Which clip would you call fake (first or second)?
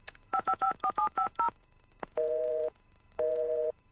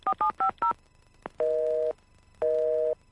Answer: first